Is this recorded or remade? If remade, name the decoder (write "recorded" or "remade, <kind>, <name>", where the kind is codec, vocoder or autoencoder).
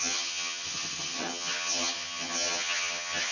remade, vocoder, HiFi-GAN